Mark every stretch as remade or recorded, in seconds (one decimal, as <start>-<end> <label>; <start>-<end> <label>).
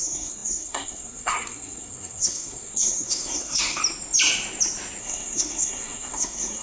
0.0-3.8 remade; 3.8-5.0 recorded; 5.0-6.6 remade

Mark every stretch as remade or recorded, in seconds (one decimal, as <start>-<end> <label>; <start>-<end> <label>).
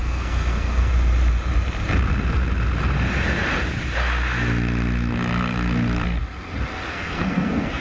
0.0-0.9 remade; 0.9-6.9 recorded; 6.9-7.8 remade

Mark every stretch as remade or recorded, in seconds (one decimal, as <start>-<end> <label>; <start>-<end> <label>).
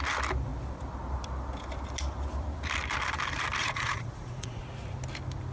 0.0-3.6 recorded; 3.6-4.6 remade; 4.6-5.5 recorded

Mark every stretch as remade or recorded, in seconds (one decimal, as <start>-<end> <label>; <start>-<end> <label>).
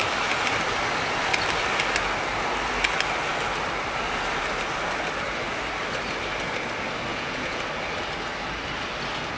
0.0-7.1 recorded; 7.1-7.6 remade; 7.6-9.4 recorded